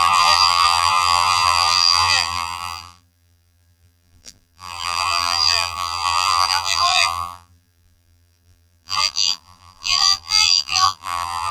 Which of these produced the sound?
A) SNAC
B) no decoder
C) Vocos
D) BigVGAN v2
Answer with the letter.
D